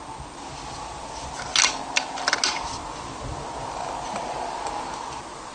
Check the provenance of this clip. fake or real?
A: real